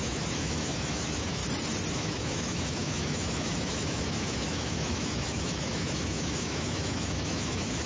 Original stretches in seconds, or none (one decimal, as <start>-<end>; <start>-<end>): 1.4-1.9